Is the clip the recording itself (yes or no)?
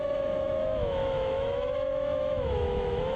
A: no